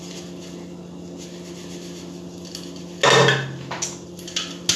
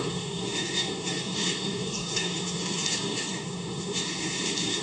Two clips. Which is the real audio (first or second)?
first